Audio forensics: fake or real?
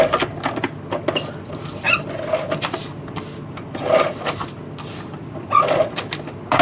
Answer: real